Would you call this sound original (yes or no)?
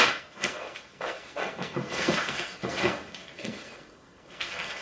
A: no